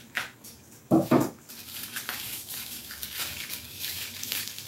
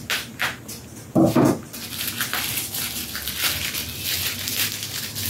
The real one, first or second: second